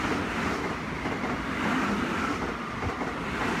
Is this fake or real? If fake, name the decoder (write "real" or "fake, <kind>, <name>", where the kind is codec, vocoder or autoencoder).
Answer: real